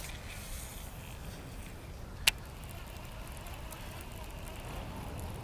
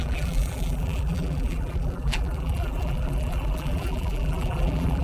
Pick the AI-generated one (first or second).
second